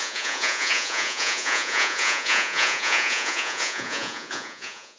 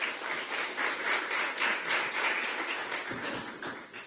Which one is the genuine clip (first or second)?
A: second